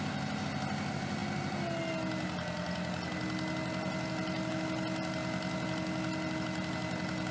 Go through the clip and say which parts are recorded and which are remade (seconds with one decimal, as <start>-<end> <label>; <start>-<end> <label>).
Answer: 0.0-7.3 recorded